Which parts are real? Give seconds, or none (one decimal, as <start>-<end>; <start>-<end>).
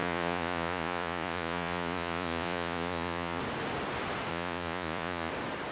3.4-4.3; 5.3-5.7